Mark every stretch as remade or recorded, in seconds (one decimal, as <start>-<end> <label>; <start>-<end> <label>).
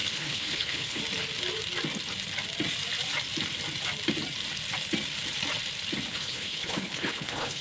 0.0-1.0 remade; 1.0-6.1 recorded; 6.1-7.6 remade